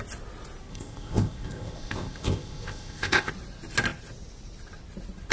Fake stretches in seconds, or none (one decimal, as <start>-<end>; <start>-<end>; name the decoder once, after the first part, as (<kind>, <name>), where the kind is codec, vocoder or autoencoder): 0.7-3.3 (codec, ZipCodec)